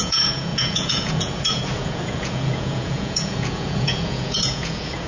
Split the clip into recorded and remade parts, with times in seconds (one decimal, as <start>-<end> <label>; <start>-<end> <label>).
0.0-5.1 remade